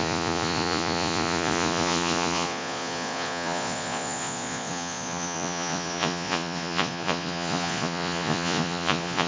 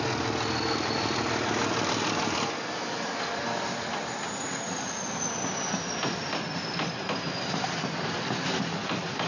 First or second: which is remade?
first